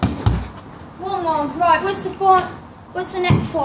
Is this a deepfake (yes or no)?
no